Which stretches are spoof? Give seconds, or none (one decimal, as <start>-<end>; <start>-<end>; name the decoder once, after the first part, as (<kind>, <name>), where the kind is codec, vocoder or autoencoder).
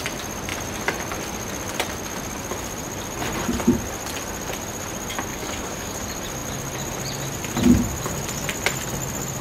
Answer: 5.3-5.9 (codec, DAC)